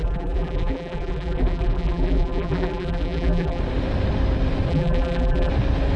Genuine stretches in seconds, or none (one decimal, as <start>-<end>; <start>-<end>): 3.6-4.7; 5.5-6.0